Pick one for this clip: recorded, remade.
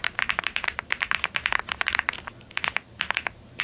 remade